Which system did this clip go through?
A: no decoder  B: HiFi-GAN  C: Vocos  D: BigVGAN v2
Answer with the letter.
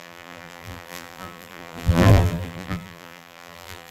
D